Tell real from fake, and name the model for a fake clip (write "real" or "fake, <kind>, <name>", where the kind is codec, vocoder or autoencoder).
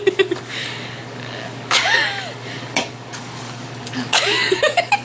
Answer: fake, codec, DAC